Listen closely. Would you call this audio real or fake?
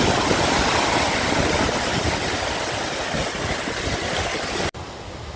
real